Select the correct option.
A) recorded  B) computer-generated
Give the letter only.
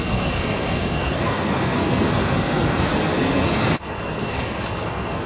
B